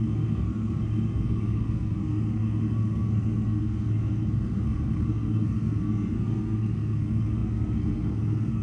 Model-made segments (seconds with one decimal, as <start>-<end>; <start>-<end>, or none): 0.0-8.6